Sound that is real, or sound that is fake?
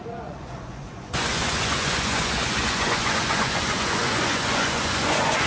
fake